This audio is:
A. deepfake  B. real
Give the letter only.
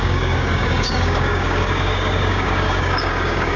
A